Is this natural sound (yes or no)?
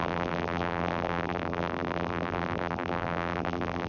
no